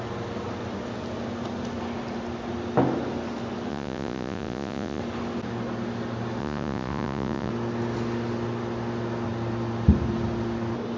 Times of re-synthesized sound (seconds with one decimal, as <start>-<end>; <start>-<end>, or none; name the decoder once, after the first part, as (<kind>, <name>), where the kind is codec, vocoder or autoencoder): 3.7-5.0 (vocoder, Vocos); 6.4-7.5